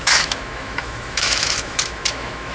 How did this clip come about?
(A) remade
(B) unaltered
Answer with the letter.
A